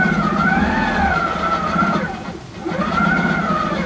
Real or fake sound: real